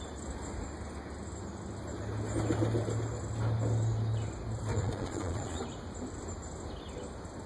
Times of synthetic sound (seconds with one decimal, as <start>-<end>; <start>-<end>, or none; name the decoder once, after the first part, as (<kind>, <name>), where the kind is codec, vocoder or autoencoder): 4.7-5.6 (vocoder, Vocos)